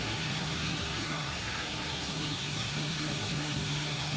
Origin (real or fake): fake